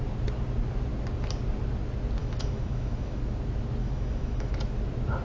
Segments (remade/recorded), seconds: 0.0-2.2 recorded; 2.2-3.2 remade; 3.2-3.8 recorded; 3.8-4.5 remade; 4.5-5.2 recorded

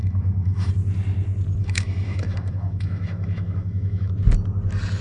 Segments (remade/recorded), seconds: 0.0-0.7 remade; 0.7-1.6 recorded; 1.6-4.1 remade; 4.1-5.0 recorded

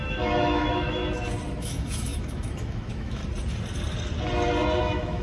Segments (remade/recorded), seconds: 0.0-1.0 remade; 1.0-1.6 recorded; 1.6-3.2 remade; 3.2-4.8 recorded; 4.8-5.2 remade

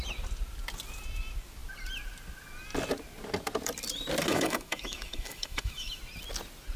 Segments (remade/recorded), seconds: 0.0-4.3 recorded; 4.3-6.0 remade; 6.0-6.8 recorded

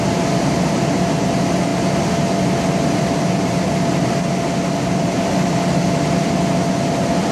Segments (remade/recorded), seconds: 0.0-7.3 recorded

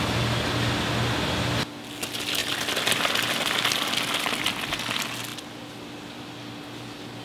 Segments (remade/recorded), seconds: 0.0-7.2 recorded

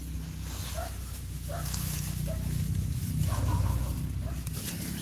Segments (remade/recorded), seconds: 0.0-0.8 recorded; 0.8-3.8 remade; 3.8-5.0 recorded

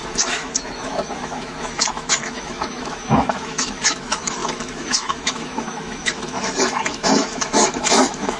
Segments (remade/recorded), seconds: 0.0-8.4 remade